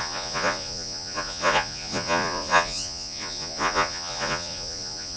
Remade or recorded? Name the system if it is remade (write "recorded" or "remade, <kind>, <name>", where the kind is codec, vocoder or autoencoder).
remade, vocoder, Vocos